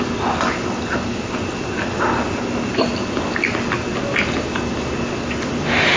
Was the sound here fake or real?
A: real